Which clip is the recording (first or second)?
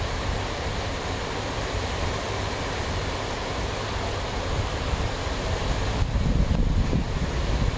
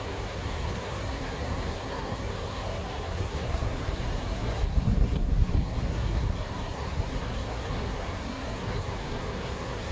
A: first